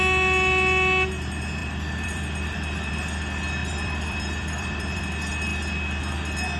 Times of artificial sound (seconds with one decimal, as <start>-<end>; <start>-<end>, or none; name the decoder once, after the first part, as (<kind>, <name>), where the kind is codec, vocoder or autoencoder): 1.6-2.9 (vocoder, BigVGAN v2); 3.6-5.0